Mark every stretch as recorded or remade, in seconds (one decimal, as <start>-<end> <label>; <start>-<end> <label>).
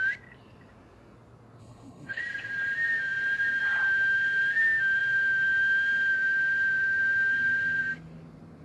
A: 0.0-1.6 recorded; 1.6-2.2 remade; 2.2-8.6 recorded